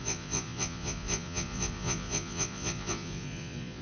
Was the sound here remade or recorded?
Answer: remade